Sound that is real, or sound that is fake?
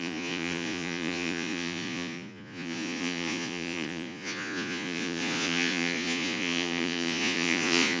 fake